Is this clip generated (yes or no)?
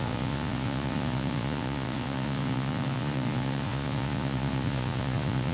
yes